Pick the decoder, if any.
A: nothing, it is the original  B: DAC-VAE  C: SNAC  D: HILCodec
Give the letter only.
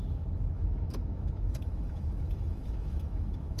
B